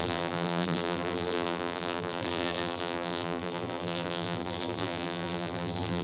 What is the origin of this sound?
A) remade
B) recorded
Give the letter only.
A